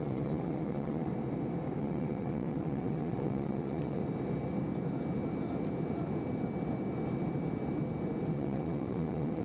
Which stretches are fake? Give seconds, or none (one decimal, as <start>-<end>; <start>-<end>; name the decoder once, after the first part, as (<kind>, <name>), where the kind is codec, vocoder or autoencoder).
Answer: 0.0-1.1 (vocoder, WaveNeXt); 1.8-4.0; 8.3-9.4